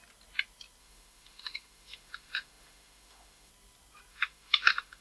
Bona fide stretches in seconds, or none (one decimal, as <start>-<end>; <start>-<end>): 0.0-0.8; 3.5-4.1